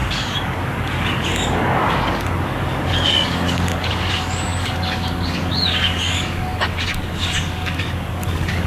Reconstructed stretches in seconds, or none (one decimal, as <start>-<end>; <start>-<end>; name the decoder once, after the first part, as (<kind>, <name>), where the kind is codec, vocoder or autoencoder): 0.0-8.7 (codec, DAC)